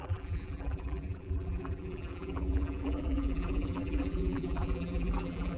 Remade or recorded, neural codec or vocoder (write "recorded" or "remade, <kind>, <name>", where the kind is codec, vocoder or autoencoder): remade, vocoder, BigVGAN v2